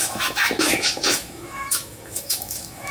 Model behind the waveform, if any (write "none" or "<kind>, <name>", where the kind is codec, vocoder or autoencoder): autoencoder, DAC-VAE